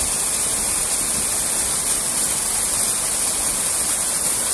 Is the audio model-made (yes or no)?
no